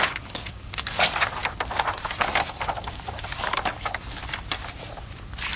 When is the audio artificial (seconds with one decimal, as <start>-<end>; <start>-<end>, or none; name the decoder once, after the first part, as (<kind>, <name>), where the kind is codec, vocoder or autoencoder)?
0.0-1.4 (codec, DAC); 2.8-4.2